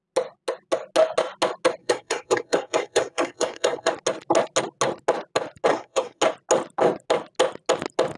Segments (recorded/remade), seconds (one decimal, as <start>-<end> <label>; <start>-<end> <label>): 0.0-1.8 recorded; 1.8-3.9 remade; 3.9-5.7 recorded; 5.7-6.2 remade; 6.2-8.2 recorded